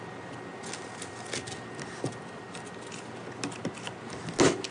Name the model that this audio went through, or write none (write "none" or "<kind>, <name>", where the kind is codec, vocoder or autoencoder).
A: none